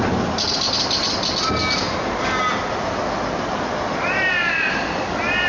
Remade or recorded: recorded